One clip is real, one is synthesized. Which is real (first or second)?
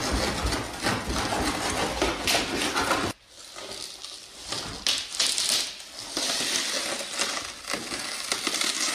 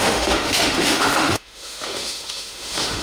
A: first